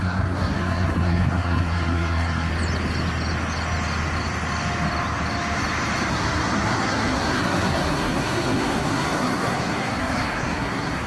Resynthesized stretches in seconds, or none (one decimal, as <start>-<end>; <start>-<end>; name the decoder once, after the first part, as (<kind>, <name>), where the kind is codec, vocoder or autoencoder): 0.0-2.5 (codec, SNAC); 6.1-11.1